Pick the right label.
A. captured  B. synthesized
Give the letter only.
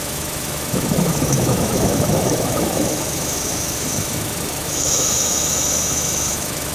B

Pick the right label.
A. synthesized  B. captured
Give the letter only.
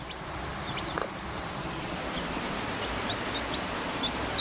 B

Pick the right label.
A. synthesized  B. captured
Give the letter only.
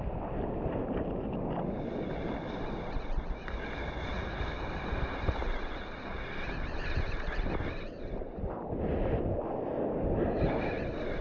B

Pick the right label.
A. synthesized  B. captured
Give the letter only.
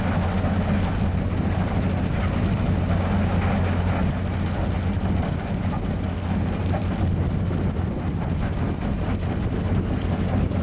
B